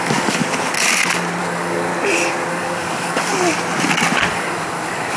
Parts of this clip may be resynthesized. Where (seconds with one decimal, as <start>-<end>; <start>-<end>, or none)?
0.0-0.4; 1.4-1.9; 2.5-3.3; 4.3-5.2